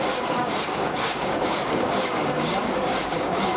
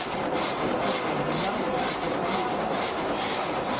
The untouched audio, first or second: second